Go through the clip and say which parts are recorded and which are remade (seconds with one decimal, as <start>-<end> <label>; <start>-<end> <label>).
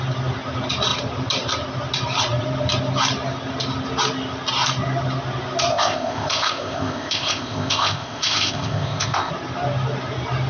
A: 0.0-5.7 recorded; 5.7-9.3 remade; 9.3-10.5 recorded